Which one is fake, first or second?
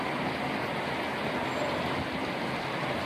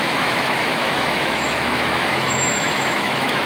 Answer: second